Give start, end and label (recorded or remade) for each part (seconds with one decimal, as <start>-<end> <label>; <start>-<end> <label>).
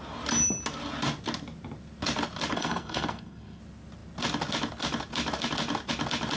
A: 0.0-2.5 recorded; 2.5-3.6 remade; 3.6-6.4 recorded